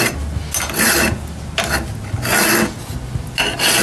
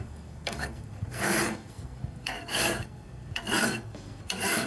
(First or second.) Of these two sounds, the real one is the first